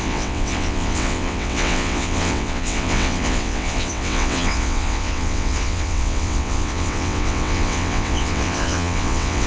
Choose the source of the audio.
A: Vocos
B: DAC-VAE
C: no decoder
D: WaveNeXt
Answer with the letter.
D